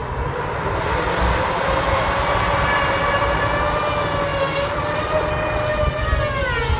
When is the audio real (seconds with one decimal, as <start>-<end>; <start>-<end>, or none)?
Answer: 0.0-6.8